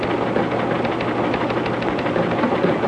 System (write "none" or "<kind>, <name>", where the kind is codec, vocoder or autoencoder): none